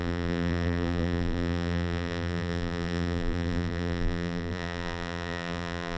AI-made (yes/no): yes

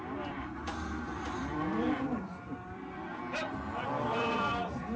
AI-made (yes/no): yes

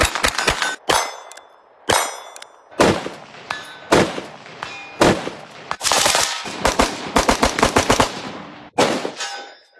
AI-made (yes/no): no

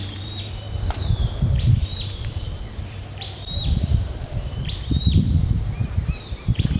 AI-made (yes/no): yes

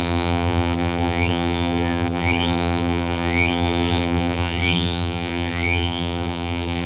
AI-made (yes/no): yes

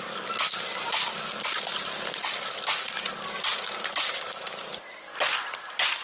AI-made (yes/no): no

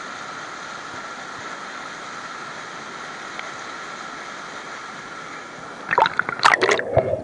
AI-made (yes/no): no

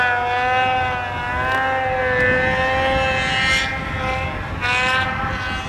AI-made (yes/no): no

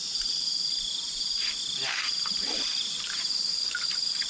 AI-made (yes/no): yes